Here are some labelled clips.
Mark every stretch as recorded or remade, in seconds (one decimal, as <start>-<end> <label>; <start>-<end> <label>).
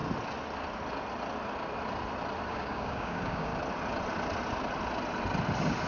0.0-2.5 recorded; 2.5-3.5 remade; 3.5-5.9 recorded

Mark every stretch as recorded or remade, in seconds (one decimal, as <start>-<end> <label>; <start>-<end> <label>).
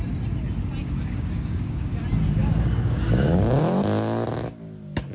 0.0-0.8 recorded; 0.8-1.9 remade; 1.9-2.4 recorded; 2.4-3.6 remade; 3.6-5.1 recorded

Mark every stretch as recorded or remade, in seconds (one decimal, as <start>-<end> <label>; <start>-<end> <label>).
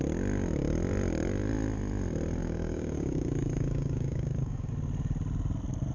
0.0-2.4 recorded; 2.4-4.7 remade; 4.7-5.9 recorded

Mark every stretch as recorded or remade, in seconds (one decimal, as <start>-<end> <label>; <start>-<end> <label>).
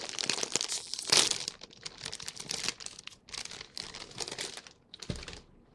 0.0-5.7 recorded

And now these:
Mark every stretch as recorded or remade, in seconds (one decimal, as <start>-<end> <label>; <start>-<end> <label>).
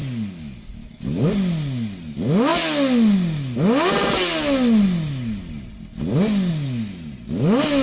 0.0-1.3 remade; 1.3-7.8 recorded